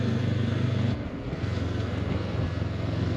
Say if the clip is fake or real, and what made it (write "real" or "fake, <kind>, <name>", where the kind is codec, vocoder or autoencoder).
fake, codec, SNAC